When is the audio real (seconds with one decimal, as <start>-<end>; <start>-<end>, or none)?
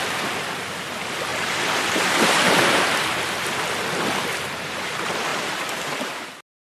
0.0-1.3; 3.2-5.3; 6.3-6.7